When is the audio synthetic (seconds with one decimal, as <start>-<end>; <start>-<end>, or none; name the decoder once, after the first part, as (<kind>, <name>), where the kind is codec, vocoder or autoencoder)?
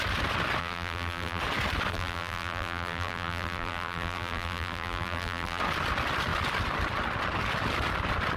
0.6-1.4 (vocoder, BigVGAN v2); 1.9-5.6